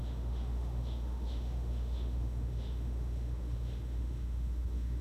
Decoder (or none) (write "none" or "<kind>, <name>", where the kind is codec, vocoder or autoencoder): autoencoder, DAC-VAE